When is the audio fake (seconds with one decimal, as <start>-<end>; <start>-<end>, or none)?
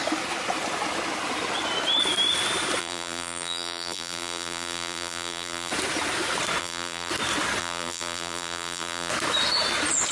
2.8-5.7; 6.6-7.1; 7.6-9.1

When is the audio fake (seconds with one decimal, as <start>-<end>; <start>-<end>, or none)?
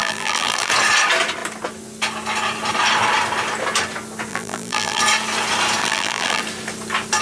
0.0-0.7; 4.3-5.0; 5.8-6.4